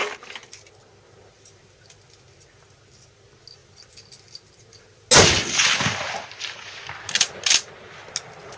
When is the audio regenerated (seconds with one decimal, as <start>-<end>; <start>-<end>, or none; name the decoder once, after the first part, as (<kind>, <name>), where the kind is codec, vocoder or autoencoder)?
none